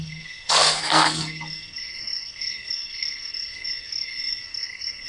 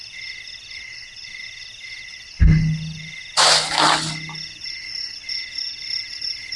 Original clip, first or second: second